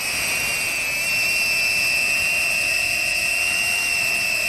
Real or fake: real